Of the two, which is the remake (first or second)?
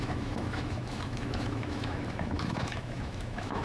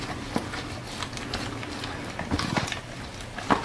first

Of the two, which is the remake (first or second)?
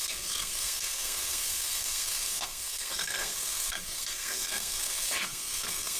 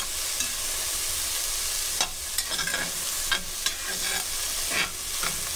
first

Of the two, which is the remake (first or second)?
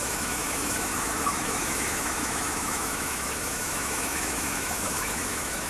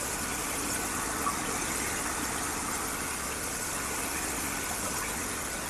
first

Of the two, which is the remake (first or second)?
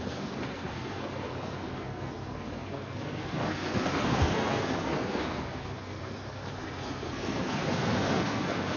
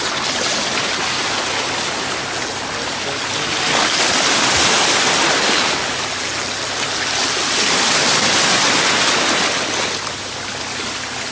first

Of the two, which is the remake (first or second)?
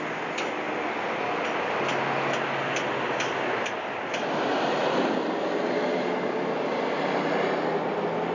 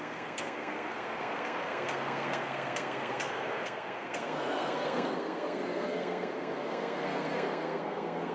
second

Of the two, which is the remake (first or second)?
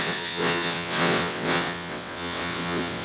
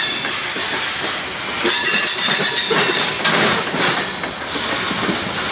first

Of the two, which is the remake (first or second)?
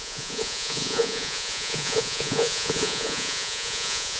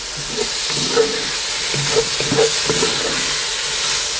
first